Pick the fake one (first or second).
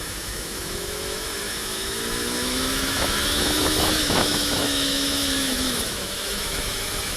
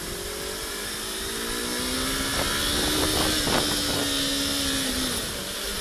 first